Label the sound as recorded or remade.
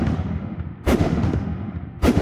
remade